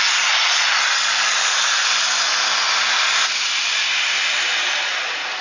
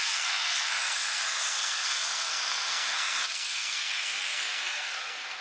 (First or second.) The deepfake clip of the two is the second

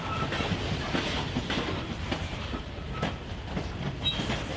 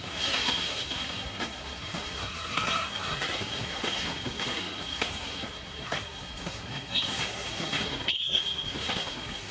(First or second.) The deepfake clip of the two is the second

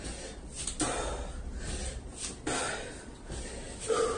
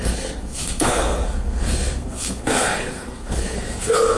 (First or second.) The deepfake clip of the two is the second